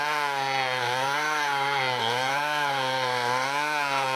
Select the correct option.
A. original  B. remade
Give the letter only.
B